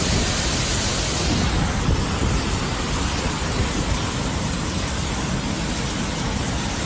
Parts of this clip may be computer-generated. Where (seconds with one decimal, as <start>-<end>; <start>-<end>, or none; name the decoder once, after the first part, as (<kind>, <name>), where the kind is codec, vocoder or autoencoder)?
4.0-5.3 (vocoder, BigVGAN v2)